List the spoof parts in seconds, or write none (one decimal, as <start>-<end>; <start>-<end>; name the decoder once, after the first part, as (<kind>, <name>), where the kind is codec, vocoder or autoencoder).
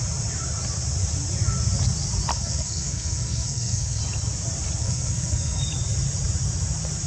2.3-4.0 (codec, SNAC); 4.8-5.6